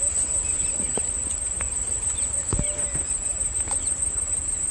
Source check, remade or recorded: recorded